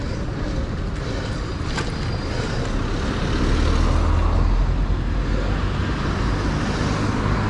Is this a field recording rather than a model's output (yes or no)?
yes